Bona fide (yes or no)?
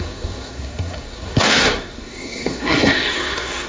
no